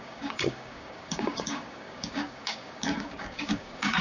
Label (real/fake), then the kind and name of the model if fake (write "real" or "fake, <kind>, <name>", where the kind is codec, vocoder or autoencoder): fake, codec, DAC